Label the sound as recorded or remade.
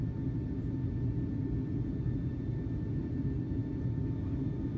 recorded